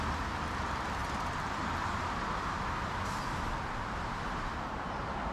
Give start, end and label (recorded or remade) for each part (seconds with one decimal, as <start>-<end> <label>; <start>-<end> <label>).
0.0-1.0 recorded; 1.0-2.5 remade; 2.5-5.3 recorded